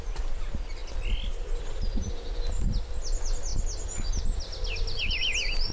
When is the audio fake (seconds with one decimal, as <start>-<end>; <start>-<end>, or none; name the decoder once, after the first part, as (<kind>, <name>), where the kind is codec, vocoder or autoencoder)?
none